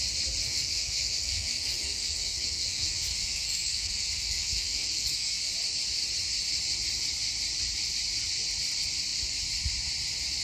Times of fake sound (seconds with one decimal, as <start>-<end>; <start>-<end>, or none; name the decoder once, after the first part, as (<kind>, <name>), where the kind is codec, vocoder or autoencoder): 0.4-5.4 (codec, SNAC)